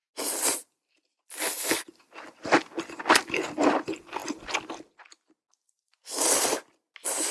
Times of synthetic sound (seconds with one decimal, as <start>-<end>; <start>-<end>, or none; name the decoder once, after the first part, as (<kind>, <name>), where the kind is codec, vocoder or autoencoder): none